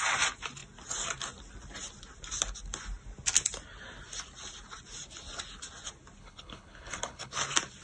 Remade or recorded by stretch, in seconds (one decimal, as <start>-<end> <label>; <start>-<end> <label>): 0.0-6.2 recorded; 6.2-7.3 remade; 7.3-7.8 recorded